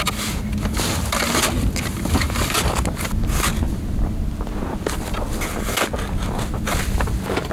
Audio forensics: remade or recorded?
recorded